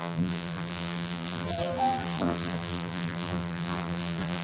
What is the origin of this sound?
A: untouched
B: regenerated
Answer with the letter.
B